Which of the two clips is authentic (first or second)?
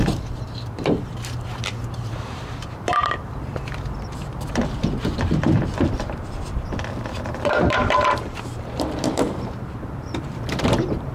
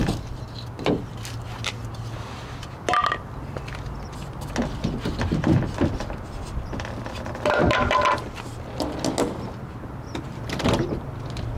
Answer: second